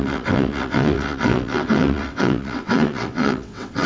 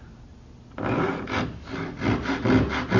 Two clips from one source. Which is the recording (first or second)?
second